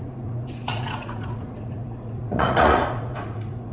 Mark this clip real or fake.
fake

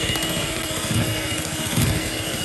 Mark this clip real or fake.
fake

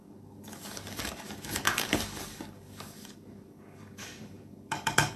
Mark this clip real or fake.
fake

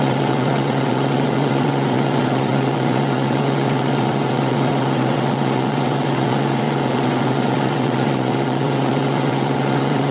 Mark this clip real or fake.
fake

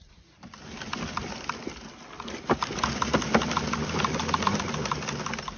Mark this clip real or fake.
real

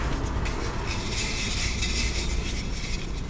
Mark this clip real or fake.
real